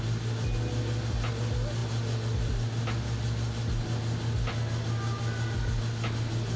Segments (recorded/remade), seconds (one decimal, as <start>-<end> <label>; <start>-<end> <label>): 0.0-6.6 recorded

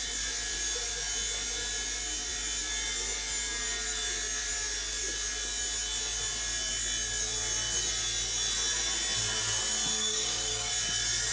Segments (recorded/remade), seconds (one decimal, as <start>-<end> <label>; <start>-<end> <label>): 0.0-10.0 recorded; 10.0-10.7 remade; 10.7-11.3 recorded

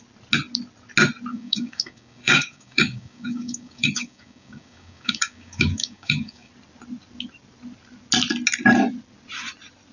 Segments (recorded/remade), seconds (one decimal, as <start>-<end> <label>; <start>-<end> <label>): 0.0-1.3 recorded; 1.3-6.5 remade; 6.5-9.9 recorded

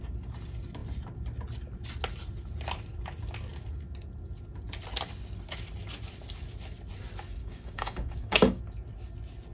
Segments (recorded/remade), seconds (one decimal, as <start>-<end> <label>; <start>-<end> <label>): 0.0-7.4 recorded; 7.4-8.6 remade; 8.6-9.5 recorded

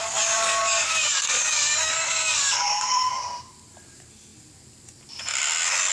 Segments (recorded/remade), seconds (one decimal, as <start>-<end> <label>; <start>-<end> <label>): 0.0-3.1 remade; 3.1-5.9 recorded

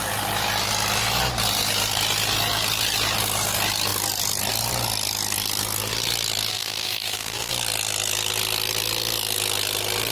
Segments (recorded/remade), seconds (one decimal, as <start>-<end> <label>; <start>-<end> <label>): 0.0-6.5 recorded; 6.5-7.5 remade; 7.5-10.1 recorded

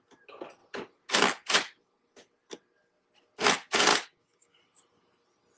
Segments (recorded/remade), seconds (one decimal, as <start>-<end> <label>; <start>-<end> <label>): 0.0-3.9 recorded; 3.9-4.6 remade; 4.6-5.6 recorded

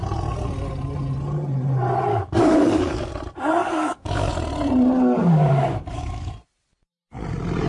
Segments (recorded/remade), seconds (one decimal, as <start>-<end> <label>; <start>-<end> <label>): 0.0-2.1 recorded; 2.1-3.1 remade; 3.1-3.6 recorded; 3.6-4.3 remade; 4.3-5.2 recorded; 5.2-6.3 remade; 6.3-7.7 recorded